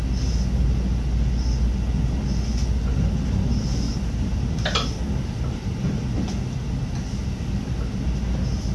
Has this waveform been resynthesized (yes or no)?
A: no